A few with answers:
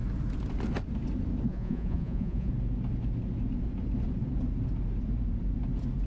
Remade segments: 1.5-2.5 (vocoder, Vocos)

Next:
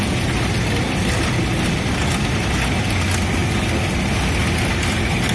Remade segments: none

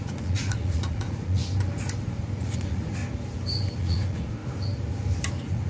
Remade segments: 0.0-1.4 (vocoder, Vocos); 2.0-3.0; 3.8-4.4; 5.3-5.7

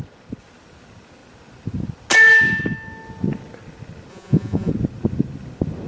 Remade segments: 4.1-4.7 (vocoder, Vocos)